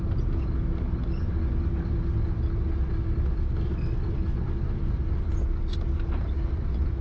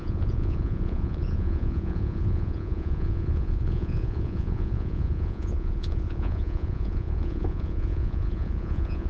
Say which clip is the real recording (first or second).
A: first